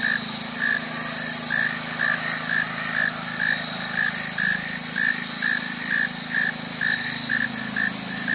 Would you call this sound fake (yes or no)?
no